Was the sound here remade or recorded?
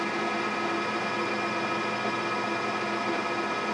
recorded